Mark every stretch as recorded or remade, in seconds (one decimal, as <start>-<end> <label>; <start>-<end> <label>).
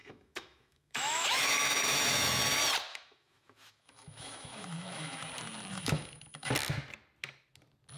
0.0-2.4 remade; 2.4-2.9 recorded; 2.9-5.2 remade; 5.2-5.7 recorded; 5.7-6.5 remade; 6.5-8.0 recorded